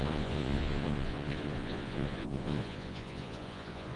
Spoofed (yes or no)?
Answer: yes